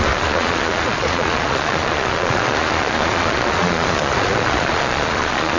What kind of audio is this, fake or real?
fake